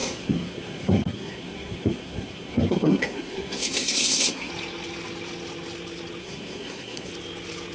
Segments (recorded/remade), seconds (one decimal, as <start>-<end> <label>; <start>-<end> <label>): 0.0-4.5 remade; 4.5-6.2 recorded; 6.2-7.1 remade; 7.1-7.7 recorded